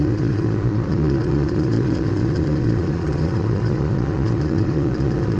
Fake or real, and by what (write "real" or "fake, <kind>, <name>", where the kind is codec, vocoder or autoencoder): fake, vocoder, Vocos